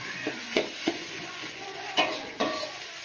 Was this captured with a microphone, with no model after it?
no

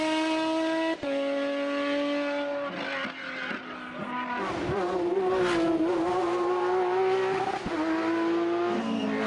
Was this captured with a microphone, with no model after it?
yes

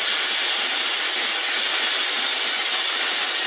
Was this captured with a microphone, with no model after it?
yes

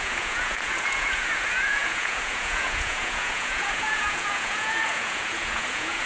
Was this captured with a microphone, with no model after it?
no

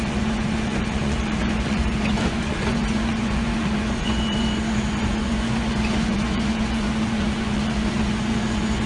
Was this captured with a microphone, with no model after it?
no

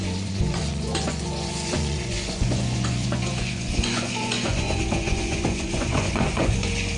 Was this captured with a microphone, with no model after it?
no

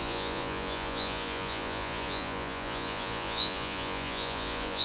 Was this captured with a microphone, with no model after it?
no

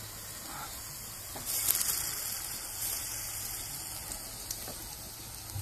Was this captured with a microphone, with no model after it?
yes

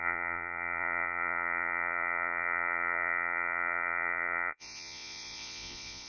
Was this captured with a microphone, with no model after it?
no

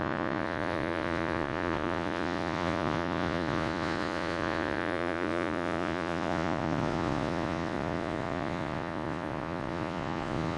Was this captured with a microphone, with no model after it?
no